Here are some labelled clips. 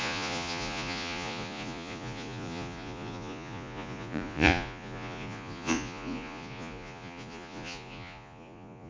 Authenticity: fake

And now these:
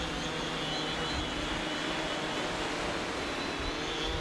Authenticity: real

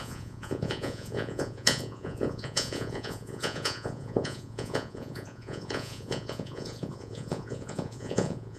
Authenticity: fake